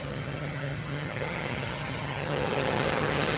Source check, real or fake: fake